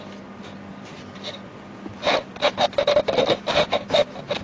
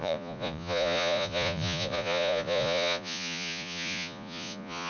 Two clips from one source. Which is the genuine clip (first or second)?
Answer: first